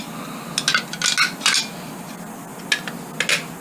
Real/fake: real